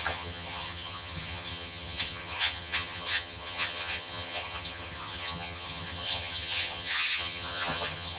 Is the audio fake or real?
fake